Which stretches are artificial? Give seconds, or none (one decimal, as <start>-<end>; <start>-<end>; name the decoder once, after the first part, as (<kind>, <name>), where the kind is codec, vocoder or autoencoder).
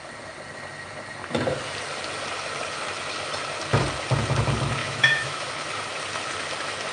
4.8-5.5 (autoencoder, DAC-VAE)